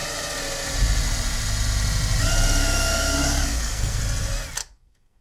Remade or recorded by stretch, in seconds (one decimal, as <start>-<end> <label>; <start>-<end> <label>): 0.0-2.6 recorded; 2.6-4.0 remade; 4.0-4.7 recorded; 4.7-5.2 remade